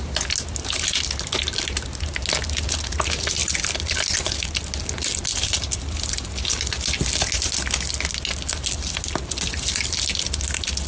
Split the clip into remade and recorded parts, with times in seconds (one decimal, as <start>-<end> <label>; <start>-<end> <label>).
0.0-10.9 recorded